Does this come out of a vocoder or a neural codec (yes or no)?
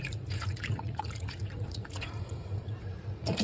yes